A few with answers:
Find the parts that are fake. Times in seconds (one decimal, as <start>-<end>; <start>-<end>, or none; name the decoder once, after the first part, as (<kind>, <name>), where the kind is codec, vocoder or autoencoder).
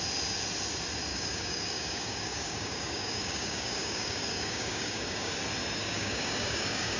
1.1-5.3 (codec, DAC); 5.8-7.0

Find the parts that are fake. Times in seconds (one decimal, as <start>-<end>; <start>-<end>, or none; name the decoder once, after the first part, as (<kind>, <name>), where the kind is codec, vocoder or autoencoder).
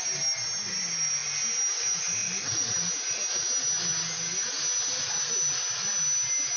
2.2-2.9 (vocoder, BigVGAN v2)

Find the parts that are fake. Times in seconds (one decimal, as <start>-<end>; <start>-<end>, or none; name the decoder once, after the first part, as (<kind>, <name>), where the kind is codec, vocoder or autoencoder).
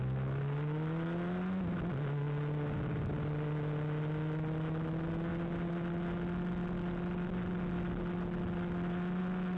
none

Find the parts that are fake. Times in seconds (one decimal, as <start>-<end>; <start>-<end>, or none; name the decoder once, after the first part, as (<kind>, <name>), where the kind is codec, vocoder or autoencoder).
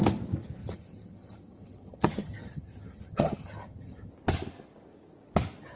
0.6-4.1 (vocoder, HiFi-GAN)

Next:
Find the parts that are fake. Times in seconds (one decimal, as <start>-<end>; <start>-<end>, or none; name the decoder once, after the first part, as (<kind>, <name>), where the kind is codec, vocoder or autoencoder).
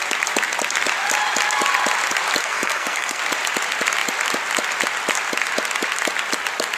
2.4-3.2 (codec, SNAC)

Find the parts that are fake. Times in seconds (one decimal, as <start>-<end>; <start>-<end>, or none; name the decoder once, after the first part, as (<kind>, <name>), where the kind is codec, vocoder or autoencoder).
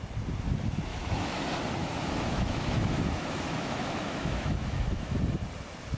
0.9-1.4 (autoencoder, DAC-VAE); 1.8-5.2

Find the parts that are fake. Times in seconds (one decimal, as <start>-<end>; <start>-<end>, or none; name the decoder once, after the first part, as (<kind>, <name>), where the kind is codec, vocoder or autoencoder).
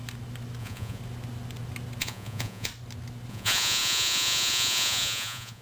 0.6-1.0 (vocoder, Vocos); 2.0-2.7; 3.3-5.6